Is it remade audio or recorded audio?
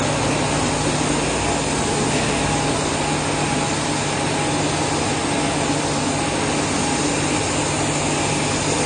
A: recorded